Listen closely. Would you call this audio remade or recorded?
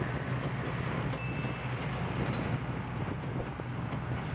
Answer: recorded